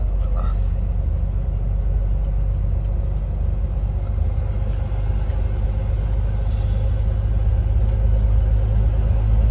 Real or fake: real